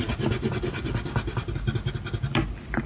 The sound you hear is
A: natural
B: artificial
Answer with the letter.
A